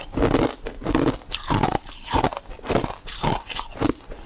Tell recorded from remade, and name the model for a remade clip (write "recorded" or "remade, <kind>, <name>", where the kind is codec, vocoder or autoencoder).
recorded